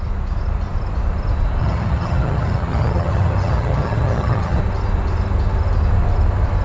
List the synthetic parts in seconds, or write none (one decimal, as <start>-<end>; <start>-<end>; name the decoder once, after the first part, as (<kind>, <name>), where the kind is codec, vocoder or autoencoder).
1.6-4.6 (vocoder, HiFi-GAN)